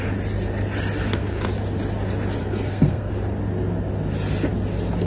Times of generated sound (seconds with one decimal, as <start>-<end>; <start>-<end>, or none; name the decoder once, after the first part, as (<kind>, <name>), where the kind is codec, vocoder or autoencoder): 1.0-1.5 (codec, SNAC); 2.4-3.1